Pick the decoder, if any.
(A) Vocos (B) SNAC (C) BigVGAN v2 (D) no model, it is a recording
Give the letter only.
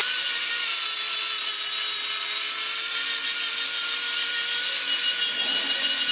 D